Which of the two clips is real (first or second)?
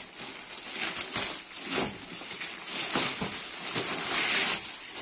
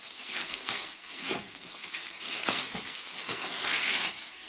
first